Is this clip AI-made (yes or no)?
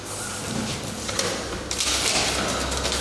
no